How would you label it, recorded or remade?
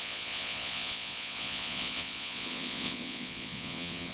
remade